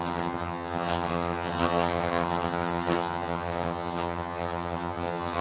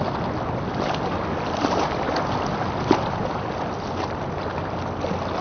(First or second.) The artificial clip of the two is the first